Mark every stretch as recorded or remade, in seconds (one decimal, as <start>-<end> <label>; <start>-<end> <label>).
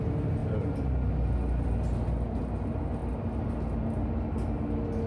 0.0-5.1 recorded